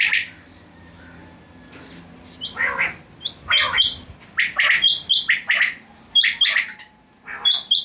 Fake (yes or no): no